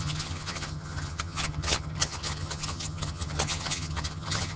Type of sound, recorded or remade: remade